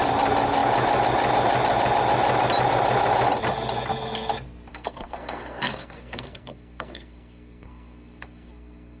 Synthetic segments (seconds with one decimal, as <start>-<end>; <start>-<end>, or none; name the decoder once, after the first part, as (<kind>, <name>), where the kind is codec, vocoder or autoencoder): 4.7-9.0 (codec, SNAC)